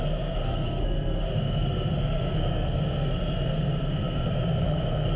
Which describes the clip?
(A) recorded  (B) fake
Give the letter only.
B